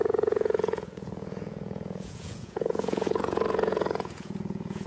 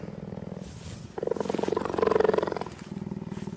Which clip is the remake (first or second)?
first